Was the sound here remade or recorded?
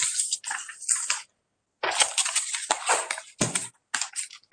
recorded